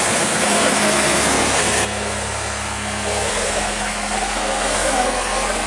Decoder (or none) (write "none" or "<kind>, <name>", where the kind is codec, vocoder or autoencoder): codec, SNAC